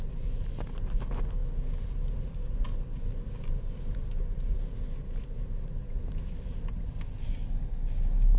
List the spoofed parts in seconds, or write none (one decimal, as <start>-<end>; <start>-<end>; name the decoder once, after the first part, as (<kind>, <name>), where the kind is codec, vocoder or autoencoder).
none